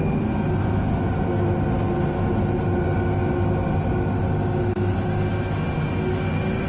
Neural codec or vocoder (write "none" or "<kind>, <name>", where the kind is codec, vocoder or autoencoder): none